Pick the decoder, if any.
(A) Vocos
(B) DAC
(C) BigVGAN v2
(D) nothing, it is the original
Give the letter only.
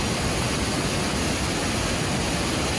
D